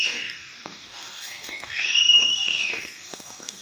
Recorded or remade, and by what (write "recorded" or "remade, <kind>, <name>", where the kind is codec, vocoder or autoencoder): remade, codec, DAC